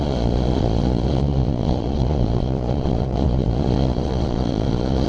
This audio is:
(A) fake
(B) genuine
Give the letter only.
A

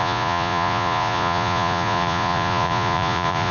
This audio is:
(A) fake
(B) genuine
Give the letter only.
A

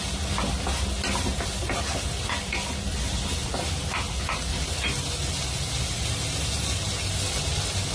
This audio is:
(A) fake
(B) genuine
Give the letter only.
B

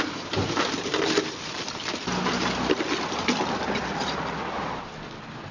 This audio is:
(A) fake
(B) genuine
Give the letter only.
B